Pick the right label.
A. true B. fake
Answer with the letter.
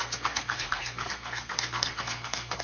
B